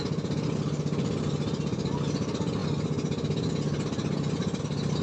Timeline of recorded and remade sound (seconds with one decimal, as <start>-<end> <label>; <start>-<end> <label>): 0.0-5.0 recorded